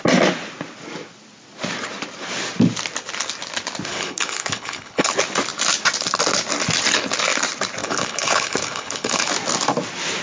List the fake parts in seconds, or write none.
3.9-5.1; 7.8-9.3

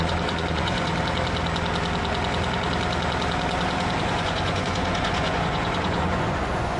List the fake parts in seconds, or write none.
0.0-0.9; 4.0-6.8

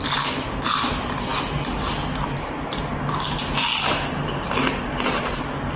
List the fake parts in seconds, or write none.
none

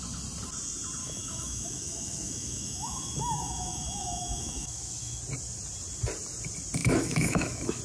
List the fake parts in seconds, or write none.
1.0-5.2; 6.8-7.8

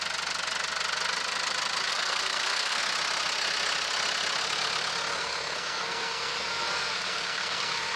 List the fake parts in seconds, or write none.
1.9-2.8; 5.1-8.0

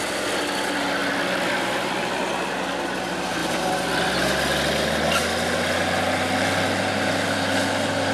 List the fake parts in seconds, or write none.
3.4-4.1